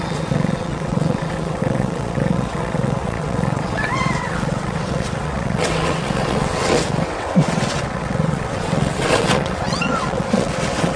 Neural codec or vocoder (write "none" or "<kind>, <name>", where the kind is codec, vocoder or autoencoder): vocoder, WaveNeXt